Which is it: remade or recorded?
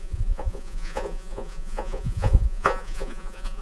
remade